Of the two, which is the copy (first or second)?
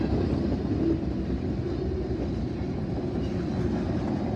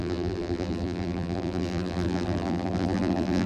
second